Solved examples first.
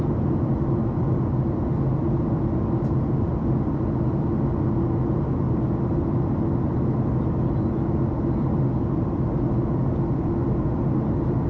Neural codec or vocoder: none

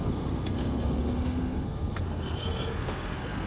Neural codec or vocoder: codec, SNAC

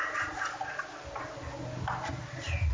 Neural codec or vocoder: none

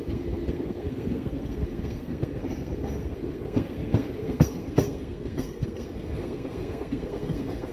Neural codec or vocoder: codec, SNAC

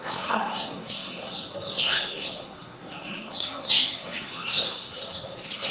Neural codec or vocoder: codec, SNAC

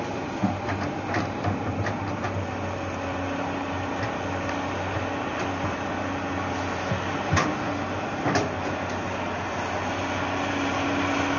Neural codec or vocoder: none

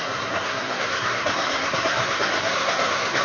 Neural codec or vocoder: codec, SNAC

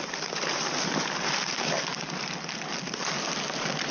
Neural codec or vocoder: none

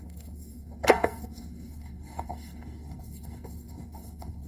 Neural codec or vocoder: codec, SNAC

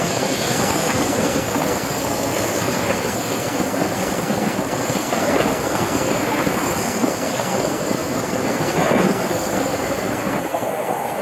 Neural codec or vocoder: codec, SNAC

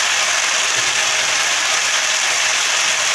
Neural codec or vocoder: none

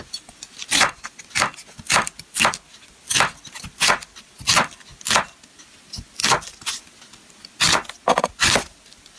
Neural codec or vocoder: none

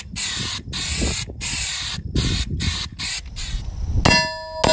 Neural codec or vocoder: none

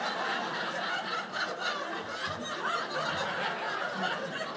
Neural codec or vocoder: none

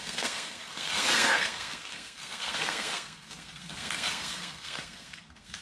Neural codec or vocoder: codec, SNAC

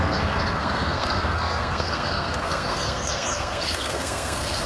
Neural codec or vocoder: codec, SNAC